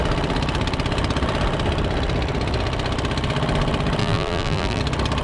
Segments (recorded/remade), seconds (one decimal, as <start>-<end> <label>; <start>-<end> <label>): 0.0-4.0 recorded; 4.0-4.8 remade; 4.8-5.2 recorded

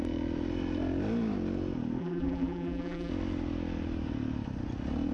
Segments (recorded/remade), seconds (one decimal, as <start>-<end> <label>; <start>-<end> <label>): 0.0-2.0 recorded; 2.0-3.1 remade; 3.1-5.1 recorded

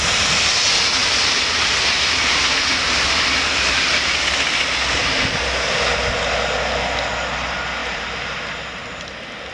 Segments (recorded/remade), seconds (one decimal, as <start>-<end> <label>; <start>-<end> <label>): 0.0-7.8 recorded; 7.8-8.4 remade; 8.4-9.5 recorded

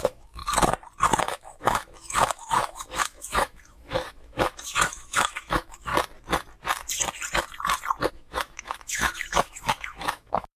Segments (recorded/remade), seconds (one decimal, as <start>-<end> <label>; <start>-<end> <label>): 0.0-0.4 remade; 0.4-1.2 recorded; 1.2-5.9 remade; 5.9-8.1 recorded; 8.1-10.6 remade

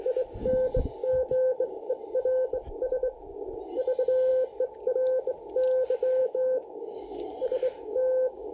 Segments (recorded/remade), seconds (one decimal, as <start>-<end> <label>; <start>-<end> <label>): 0.0-1.0 recorded; 1.0-1.9 remade; 1.9-6.2 recorded; 6.2-7.3 remade; 7.3-8.5 recorded

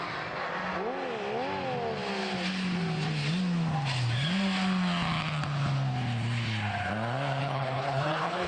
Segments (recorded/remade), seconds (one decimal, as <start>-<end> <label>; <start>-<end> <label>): 0.0-7.4 recorded; 7.4-8.5 remade

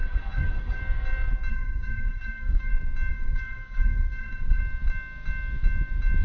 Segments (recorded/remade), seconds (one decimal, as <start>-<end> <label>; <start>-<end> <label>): 0.0-0.8 remade; 0.8-1.5 recorded; 1.5-2.7 remade; 2.7-3.1 recorded; 3.1-4.6 remade; 4.6-6.2 recorded

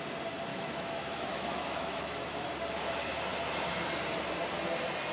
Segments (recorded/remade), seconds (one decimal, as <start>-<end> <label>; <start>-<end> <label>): 0.0-0.5 recorded; 0.5-2.5 remade; 2.5-5.1 recorded